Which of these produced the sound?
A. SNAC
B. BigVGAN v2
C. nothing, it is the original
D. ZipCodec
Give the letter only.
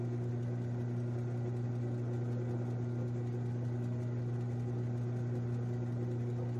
C